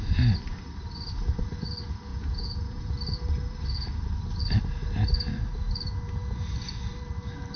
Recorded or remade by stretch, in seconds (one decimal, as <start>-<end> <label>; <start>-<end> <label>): 0.0-2.1 recorded; 2.1-2.9 remade; 2.9-7.6 recorded